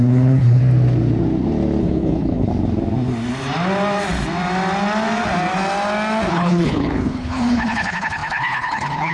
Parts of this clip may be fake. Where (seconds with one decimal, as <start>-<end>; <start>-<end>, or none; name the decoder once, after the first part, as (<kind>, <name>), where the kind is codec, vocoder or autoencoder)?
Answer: 0.0-0.6 (codec, HILCodec); 1.8-2.5; 6.3-9.1